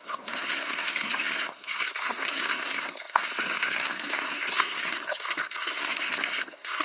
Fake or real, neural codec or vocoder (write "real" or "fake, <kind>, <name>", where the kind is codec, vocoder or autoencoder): fake, codec, SNAC